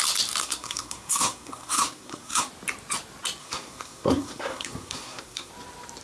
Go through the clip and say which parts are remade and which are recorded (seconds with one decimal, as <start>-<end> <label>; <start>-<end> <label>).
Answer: 0.0-0.4 recorded; 0.4-2.5 remade; 2.5-3.4 recorded; 3.4-5.5 remade; 5.5-6.0 recorded